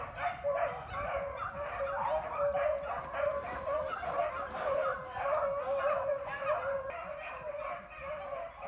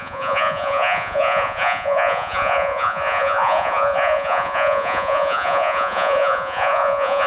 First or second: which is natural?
first